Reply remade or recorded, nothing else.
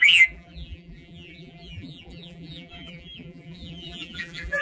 remade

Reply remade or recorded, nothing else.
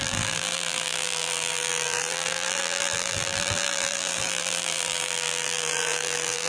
remade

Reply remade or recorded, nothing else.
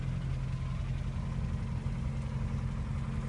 recorded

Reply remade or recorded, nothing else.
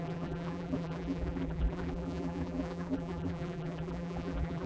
remade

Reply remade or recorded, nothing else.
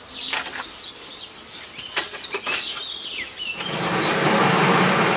recorded